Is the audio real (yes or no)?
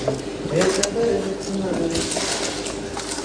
yes